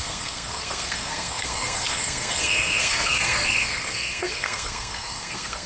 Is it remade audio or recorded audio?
remade